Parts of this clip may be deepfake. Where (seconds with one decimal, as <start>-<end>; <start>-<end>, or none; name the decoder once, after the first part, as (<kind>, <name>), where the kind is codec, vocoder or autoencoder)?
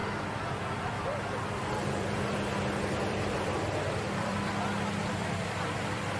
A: 0.0-0.5 (vocoder, BigVGAN v2); 1.1-4.5